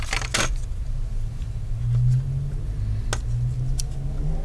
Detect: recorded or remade recorded